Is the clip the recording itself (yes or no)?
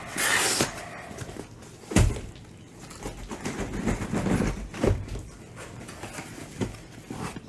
yes